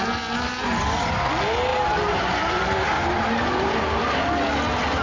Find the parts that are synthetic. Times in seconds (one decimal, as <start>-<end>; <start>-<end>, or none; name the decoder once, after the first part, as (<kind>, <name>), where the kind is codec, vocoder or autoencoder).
1.7-4.3 (vocoder, BigVGAN v2)